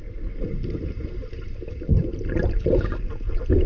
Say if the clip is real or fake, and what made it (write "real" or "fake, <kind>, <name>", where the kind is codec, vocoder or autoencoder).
real